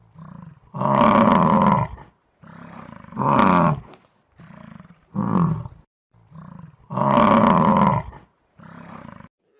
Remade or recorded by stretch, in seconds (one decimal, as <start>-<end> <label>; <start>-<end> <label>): 0.0-9.6 recorded